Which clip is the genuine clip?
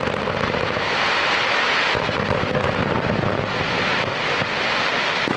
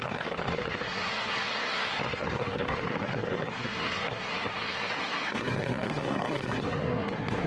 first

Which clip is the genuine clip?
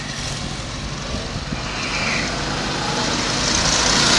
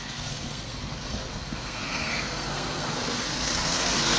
first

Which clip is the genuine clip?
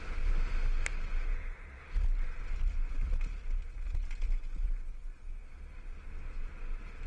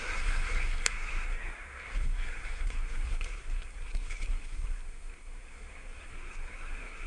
first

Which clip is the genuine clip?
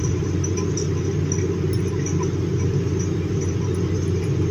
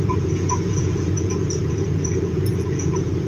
first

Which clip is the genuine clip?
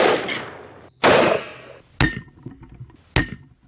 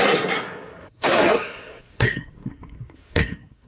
first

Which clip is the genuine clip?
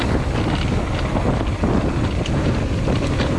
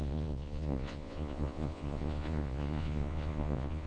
first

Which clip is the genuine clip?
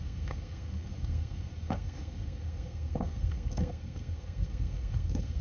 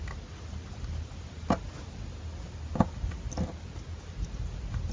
second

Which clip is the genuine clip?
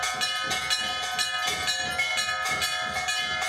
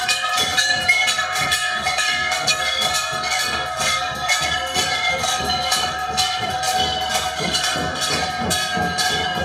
first